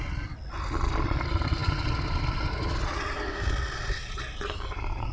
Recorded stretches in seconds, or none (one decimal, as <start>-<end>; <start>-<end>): 0.0-5.1